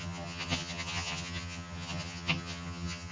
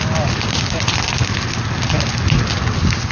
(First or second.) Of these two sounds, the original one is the second